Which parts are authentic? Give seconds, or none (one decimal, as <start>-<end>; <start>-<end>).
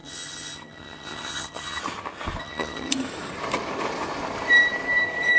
1.8-2.4; 2.9-5.4